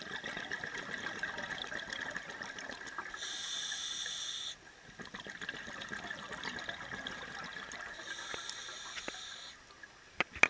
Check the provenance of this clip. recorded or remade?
recorded